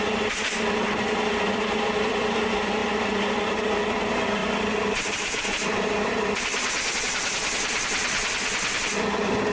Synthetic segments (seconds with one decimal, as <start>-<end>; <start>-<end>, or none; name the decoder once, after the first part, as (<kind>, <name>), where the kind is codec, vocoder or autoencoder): 0.0-2.8 (vocoder, BigVGAN v2); 3.3-9.5